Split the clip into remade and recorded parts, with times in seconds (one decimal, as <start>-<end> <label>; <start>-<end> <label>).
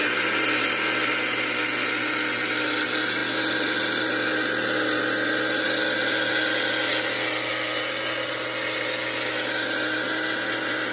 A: 0.0-10.9 recorded